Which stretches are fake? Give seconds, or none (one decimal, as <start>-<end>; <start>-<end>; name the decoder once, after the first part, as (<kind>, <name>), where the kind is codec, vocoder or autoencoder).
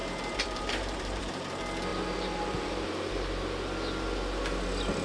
0.0-1.2 (vocoder, BigVGAN v2); 1.9-2.9